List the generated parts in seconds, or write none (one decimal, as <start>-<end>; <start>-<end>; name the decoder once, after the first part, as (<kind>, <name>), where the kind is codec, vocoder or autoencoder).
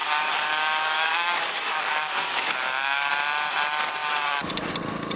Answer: 0.0-3.1 (codec, DAC); 4.0-4.7